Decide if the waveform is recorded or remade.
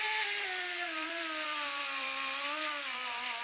remade